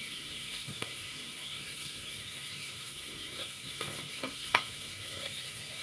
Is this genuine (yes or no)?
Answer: no